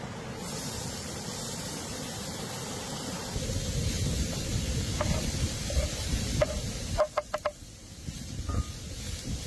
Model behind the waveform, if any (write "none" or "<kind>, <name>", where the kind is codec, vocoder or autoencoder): vocoder, BigVGAN v2